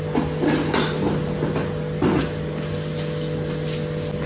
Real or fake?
real